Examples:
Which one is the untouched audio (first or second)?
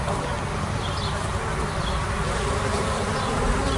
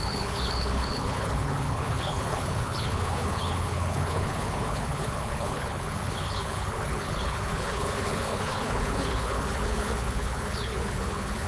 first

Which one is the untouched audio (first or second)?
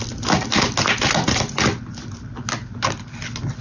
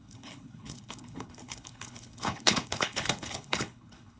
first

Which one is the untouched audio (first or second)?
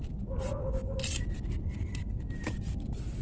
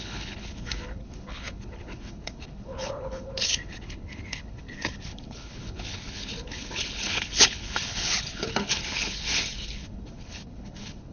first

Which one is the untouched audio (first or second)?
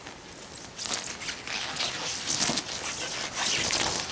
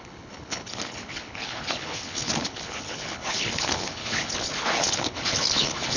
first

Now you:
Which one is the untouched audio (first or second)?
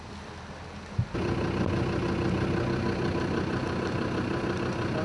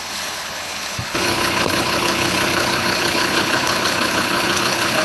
first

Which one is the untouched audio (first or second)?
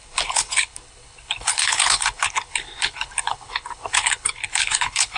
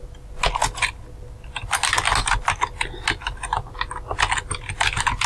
second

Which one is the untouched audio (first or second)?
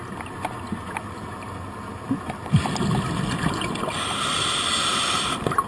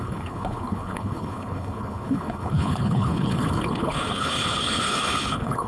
first